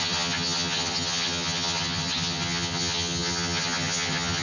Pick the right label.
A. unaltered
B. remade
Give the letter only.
B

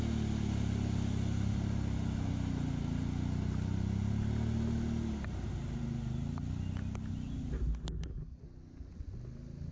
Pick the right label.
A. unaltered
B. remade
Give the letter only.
A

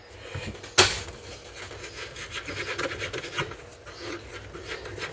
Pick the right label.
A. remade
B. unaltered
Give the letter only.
B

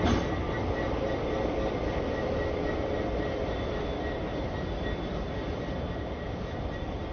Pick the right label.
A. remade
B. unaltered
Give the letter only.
B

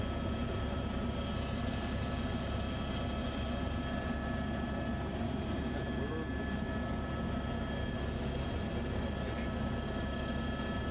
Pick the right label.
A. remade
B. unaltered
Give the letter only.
B